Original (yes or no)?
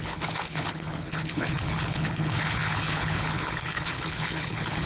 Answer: no